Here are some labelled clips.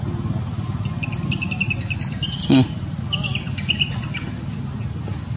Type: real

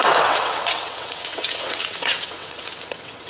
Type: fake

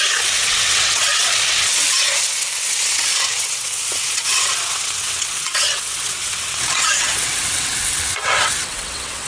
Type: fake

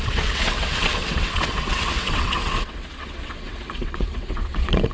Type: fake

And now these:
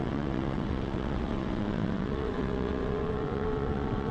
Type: fake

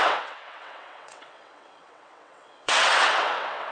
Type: fake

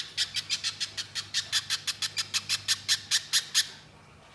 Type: real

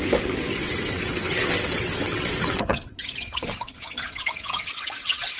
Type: fake